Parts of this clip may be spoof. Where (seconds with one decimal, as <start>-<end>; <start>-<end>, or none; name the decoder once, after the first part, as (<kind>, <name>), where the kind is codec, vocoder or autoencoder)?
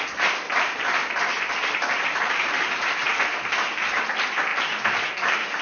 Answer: 1.3-4.0 (vocoder, BigVGAN v2); 4.5-5.1